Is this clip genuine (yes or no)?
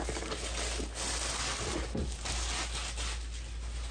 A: yes